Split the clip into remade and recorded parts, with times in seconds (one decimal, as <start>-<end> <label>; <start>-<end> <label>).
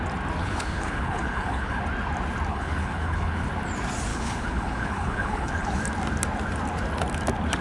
0.0-0.4 recorded; 0.4-1.8 remade; 1.8-2.5 recorded; 2.5-3.5 remade; 3.5-4.1 recorded; 4.1-5.8 remade; 5.8-7.6 recorded